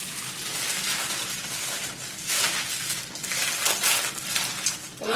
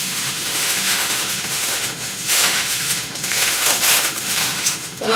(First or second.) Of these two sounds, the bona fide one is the first